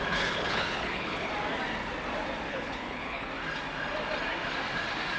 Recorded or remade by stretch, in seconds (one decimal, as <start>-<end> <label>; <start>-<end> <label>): 0.0-1.3 remade; 1.3-2.5 recorded; 2.5-3.3 remade; 3.3-5.2 recorded